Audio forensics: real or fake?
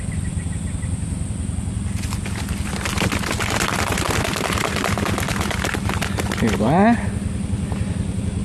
real